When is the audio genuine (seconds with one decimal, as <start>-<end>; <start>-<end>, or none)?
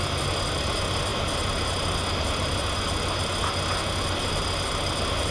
0.0-5.3